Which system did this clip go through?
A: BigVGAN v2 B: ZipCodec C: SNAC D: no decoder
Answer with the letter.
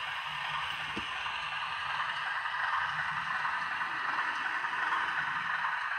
D